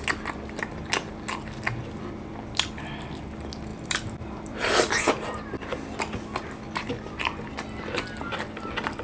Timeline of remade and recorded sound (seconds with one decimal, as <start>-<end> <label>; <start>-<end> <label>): 0.0-3.7 recorded; 3.7-5.1 remade; 5.1-9.0 recorded